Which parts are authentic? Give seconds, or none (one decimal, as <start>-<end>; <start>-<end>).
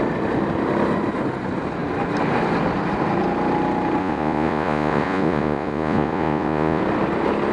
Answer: 0.0-4.0; 6.8-7.5